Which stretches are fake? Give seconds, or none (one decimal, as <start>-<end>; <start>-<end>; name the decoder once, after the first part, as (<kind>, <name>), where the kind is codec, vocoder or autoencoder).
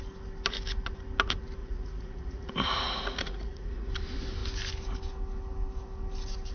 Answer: 1.6-3.9 (vocoder, Vocos)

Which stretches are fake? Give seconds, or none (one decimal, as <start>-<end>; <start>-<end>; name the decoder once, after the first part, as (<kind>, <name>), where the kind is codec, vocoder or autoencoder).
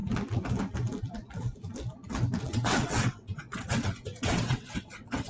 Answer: 2.4-5.3 (vocoder, WaveNeXt)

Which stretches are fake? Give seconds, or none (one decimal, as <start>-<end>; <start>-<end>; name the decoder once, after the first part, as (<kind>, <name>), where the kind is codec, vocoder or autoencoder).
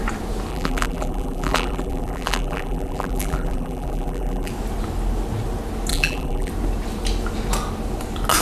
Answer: 0.5-4.5 (vocoder, BigVGAN v2); 5.9-6.5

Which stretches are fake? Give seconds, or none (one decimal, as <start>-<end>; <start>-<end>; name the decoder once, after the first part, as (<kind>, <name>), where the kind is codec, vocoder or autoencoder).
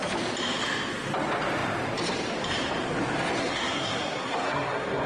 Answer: 3.4-5.1 (codec, SNAC)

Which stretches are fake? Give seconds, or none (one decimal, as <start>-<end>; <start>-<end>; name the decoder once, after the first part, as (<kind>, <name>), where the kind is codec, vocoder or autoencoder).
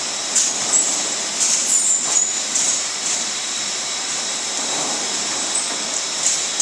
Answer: 1.6-5.6 (vocoder, BigVGAN v2)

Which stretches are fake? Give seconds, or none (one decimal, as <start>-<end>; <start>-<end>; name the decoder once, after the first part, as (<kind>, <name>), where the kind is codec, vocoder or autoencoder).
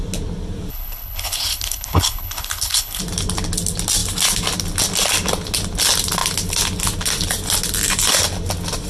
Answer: 0.7-3.0 (codec, HILCodec)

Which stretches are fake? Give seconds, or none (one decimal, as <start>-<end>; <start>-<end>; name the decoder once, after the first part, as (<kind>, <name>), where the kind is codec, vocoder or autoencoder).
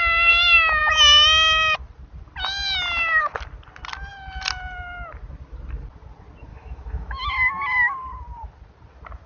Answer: 6.5-7.3 (autoencoder, DAC-VAE)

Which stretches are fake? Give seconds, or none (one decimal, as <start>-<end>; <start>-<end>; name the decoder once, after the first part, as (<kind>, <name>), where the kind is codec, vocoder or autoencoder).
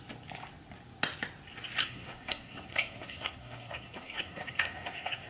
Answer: 1.8-5.3 (codec, SNAC)